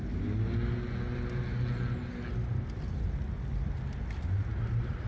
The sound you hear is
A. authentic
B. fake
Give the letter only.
A